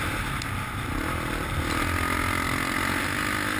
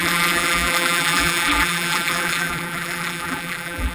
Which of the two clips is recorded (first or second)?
first